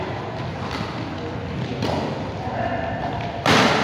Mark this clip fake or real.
real